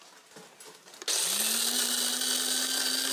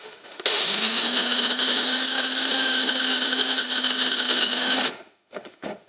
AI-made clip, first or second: second